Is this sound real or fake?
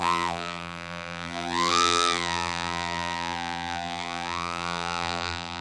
fake